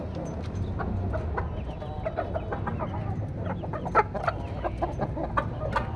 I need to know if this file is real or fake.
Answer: real